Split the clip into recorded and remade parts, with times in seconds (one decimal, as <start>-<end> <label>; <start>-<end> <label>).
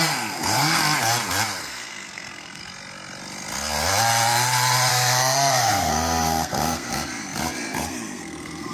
0.0-0.8 remade; 0.8-1.6 recorded; 1.6-2.6 remade; 2.6-4.9 recorded; 4.9-8.7 remade